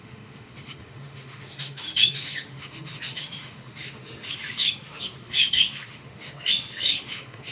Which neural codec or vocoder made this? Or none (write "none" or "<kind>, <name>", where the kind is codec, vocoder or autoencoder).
autoencoder, DAC-VAE